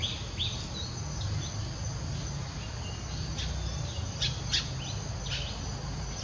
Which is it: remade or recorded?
recorded